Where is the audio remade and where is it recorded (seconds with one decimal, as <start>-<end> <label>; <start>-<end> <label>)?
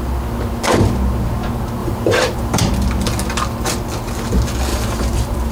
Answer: 0.0-1.8 recorded; 1.8-2.6 remade; 2.6-4.7 recorded; 4.7-5.5 remade